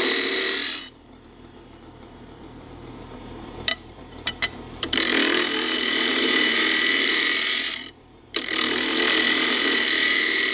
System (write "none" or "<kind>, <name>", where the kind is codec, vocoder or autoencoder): vocoder, BigVGAN v2